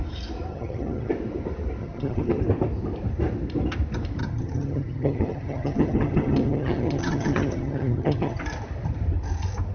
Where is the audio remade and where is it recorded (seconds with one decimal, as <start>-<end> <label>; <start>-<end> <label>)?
0.0-0.5 recorded; 0.5-1.1 remade; 1.1-1.8 recorded; 1.8-2.4 remade; 2.4-4.2 recorded; 4.2-8.4 remade; 8.4-9.7 recorded